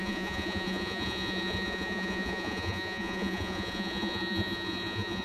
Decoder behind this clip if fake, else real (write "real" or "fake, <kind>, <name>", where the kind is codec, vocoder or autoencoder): fake, vocoder, Vocos